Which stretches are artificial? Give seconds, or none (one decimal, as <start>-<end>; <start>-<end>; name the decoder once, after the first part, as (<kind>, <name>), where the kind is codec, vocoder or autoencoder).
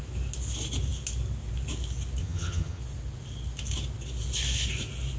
2.2-2.8 (vocoder, HiFi-GAN)